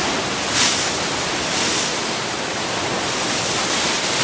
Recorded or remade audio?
recorded